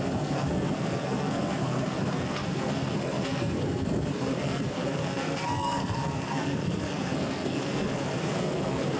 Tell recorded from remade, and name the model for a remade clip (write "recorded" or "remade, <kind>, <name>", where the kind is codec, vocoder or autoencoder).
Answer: remade, codec, SNAC